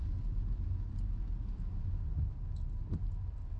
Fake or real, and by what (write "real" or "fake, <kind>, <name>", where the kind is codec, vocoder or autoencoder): real